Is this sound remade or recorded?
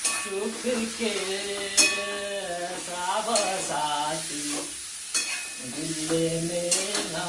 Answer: recorded